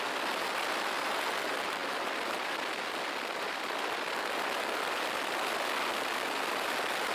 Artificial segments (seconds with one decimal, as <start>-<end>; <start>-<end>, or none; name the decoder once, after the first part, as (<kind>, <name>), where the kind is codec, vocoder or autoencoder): none